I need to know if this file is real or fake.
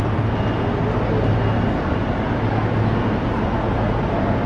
real